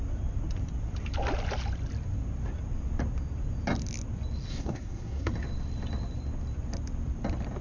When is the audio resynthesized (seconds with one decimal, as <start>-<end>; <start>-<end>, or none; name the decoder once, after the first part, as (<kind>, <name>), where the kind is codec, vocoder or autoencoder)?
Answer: 4.5-5.3 (codec, SNAC)